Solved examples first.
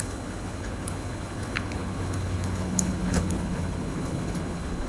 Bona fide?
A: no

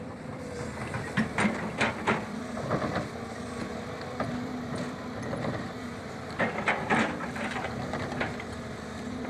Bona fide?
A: no